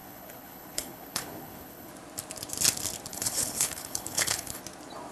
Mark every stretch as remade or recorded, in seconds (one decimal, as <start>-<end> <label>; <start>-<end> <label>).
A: 0.0-1.9 remade; 1.9-3.1 recorded; 3.1-4.6 remade; 4.6-5.1 recorded